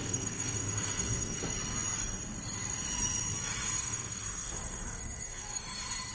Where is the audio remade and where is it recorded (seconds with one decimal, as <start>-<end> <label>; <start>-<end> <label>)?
0.0-1.4 remade; 1.4-3.8 recorded; 3.8-5.6 remade; 5.6-6.1 recorded